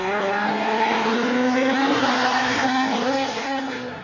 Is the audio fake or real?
fake